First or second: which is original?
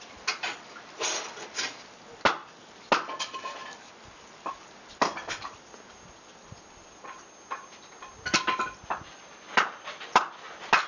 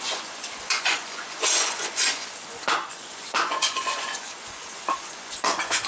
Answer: first